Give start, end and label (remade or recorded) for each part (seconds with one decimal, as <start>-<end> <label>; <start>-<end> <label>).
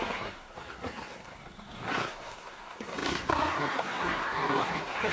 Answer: 0.0-5.1 remade